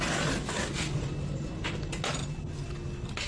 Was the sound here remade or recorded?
recorded